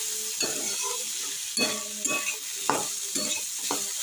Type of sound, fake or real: real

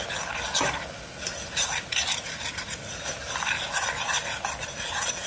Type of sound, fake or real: real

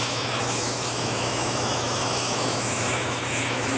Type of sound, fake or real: fake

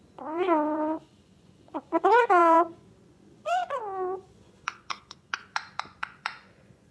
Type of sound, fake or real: fake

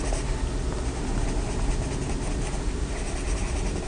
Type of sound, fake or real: real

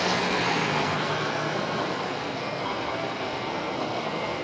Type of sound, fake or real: fake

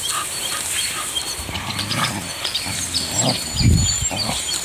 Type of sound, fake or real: fake